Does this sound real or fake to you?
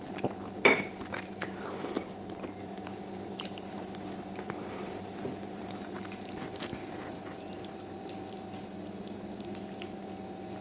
real